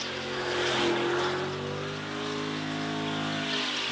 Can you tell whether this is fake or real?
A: real